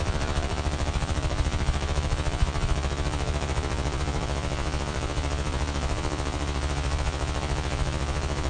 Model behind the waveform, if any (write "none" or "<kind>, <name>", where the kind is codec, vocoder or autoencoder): vocoder, Vocos